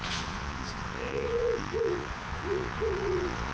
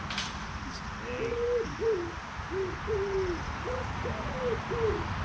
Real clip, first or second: second